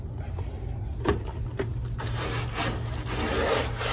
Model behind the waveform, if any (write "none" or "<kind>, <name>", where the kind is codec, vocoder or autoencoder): none